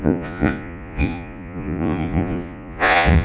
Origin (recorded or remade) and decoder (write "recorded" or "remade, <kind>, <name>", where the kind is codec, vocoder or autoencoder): remade, vocoder, Vocos